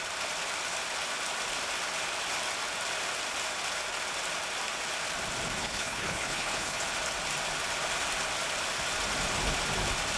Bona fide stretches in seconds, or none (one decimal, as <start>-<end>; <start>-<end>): 0.0-5.6; 6.8-10.2